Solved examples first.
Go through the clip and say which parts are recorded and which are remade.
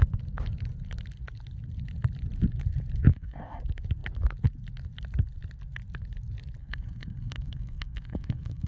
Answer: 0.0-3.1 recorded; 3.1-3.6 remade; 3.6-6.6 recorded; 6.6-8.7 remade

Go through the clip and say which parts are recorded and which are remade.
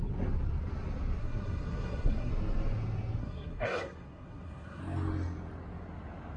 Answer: 0.0-1.2 recorded; 1.2-2.3 remade; 2.3-3.2 recorded; 3.2-4.8 remade; 4.8-6.4 recorded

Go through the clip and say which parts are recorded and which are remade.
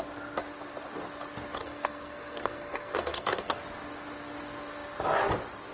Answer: 0.0-1.6 recorded; 1.6-3.6 remade; 3.6-5.7 recorded